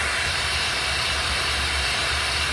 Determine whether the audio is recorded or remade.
remade